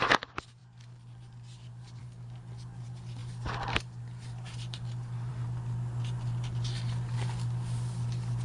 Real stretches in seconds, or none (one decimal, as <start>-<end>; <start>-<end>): 0.0-8.4